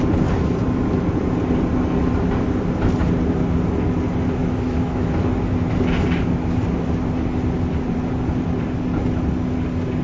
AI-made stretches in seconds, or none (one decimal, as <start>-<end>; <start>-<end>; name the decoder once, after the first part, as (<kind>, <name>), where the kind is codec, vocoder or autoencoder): 4.4-5.1 (autoencoder, DAC-VAE)